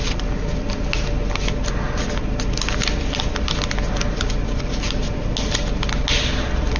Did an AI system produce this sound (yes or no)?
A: no